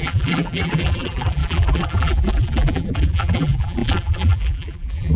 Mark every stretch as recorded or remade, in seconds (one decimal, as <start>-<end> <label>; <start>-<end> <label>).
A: 0.0-5.2 remade

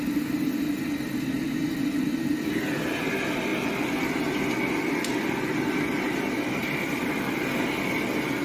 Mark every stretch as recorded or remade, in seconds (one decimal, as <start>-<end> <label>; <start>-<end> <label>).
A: 0.0-3.5 recorded; 3.5-4.4 remade; 4.4-6.6 recorded; 6.6-7.4 remade; 7.4-8.4 recorded